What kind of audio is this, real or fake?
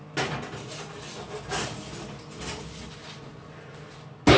real